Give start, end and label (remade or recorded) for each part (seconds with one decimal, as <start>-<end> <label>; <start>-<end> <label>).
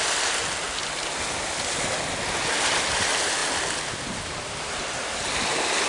0.0-3.4 recorded; 3.4-4.6 remade; 4.6-5.9 recorded